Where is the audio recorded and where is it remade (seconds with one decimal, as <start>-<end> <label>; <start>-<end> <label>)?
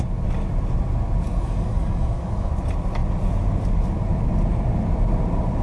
0.0-1.3 recorded; 1.3-2.5 remade; 2.5-5.6 recorded